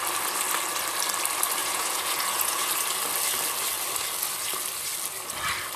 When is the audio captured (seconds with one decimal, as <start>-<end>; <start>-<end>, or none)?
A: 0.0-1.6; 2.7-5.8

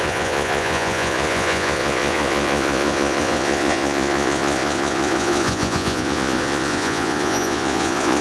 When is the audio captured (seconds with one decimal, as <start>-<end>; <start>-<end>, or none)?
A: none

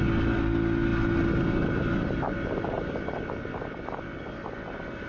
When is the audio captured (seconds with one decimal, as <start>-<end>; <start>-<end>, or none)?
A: 0.0-5.1

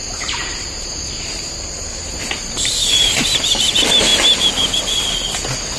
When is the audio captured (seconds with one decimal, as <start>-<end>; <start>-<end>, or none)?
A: 3.2-5.8

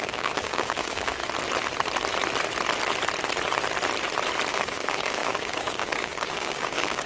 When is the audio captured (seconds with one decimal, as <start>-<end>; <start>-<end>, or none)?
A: 1.2-4.5

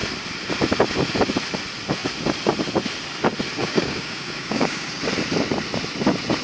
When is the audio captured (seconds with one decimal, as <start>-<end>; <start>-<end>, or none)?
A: 0.0-3.6; 5.0-6.4